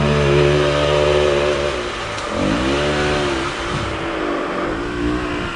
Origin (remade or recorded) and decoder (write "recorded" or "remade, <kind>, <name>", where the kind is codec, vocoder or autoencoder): recorded